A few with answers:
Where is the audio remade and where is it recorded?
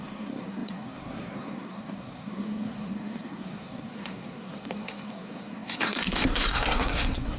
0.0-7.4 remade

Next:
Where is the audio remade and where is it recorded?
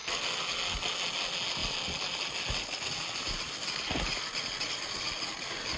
0.0-5.8 recorded